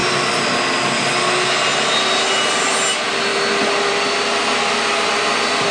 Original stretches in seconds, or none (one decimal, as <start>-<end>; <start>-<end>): 0.0-5.7